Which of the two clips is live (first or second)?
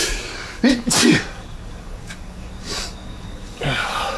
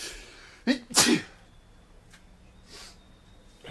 second